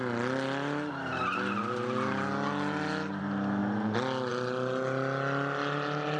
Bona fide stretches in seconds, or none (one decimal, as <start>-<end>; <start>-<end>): 0.0-6.2